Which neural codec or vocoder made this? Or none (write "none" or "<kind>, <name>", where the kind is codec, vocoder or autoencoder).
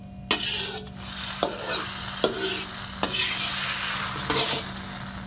none